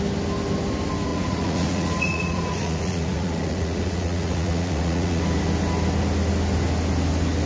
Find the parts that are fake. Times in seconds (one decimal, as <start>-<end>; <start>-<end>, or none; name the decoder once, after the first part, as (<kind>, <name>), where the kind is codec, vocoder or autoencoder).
1.1-5.2 (vocoder, Vocos)